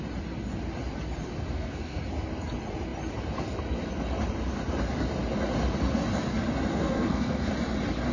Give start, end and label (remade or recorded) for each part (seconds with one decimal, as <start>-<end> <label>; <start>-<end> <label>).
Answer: 0.0-1.5 recorded; 1.5-2.0 remade; 2.0-6.7 recorded; 6.7-7.5 remade; 7.5-8.1 recorded